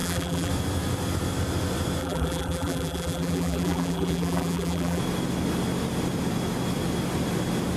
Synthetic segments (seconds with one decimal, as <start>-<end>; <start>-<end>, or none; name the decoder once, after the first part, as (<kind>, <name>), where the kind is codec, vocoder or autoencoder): 0.0-0.5 (vocoder, BigVGAN v2); 2.0-5.0